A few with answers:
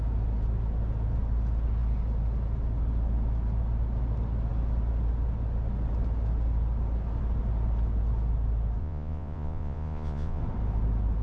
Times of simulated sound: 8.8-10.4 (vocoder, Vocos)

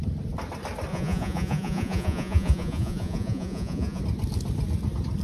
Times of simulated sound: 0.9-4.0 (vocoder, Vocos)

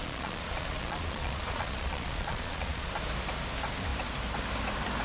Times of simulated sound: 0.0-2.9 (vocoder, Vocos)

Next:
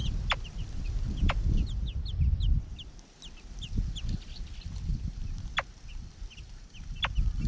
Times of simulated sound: none

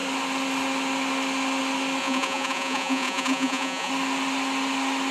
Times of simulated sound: 2.0-3.9 (vocoder, Vocos)

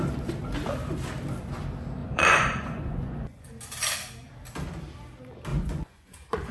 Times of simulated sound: 2.0-3.5 (vocoder, Vocos); 5.5-6.5

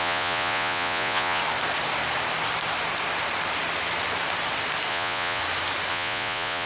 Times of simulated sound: 0.0-1.4 (vocoder, Vocos); 4.9-5.4; 5.9-6.7